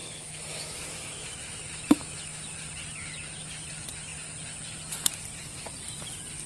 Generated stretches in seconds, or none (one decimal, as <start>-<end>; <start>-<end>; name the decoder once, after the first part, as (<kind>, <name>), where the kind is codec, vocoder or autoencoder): 0.0-2.4 (autoencoder, DAC-VAE)